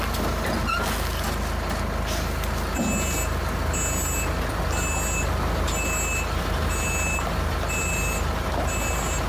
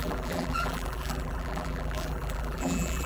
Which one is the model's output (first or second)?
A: second